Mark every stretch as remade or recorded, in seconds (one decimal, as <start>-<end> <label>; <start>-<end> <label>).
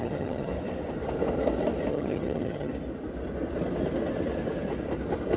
0.0-0.5 remade; 0.5-1.9 recorded; 1.9-2.7 remade; 2.7-5.4 recorded